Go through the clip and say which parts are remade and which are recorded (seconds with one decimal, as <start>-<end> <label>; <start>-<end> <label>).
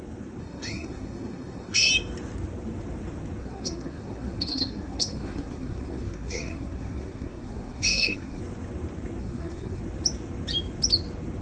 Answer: 0.0-0.4 recorded; 0.4-1.9 remade; 1.9-3.4 recorded; 3.4-8.4 remade; 8.4-9.2 recorded; 9.2-9.8 remade; 9.8-11.4 recorded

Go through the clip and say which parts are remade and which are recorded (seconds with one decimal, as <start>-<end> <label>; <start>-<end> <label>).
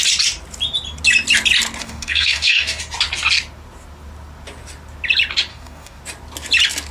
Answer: 0.0-1.8 recorded; 1.8-2.8 remade; 2.8-5.5 recorded; 5.5-6.0 remade; 6.0-6.9 recorded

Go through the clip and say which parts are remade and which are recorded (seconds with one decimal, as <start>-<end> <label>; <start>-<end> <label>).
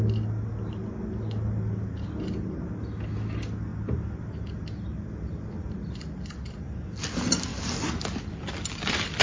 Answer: 0.0-9.2 recorded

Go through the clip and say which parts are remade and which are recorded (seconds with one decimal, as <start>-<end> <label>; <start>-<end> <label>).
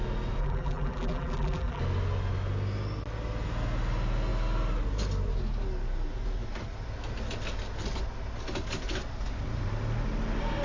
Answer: 0.0-0.4 recorded; 0.4-1.8 remade; 1.8-10.6 recorded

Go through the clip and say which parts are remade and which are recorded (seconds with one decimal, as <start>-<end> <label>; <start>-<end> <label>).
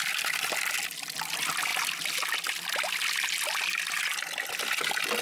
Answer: 0.0-1.7 recorded; 1.7-3.6 remade; 3.6-5.2 recorded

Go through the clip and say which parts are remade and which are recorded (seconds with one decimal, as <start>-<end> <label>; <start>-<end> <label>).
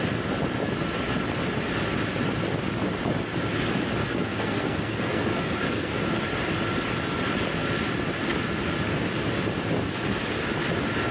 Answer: 0.0-4.0 recorded; 4.0-6.0 remade; 6.0-11.1 recorded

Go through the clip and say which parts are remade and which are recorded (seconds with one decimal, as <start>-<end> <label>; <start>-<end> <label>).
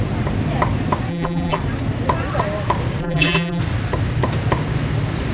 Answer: 0.0-1.1 recorded; 1.1-1.6 remade; 1.6-3.0 recorded; 3.0-3.6 remade; 3.6-5.3 recorded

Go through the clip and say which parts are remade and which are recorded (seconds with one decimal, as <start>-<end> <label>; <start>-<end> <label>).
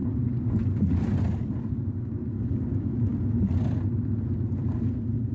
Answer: 0.0-2.7 recorded; 2.7-3.1 remade; 3.1-5.3 recorded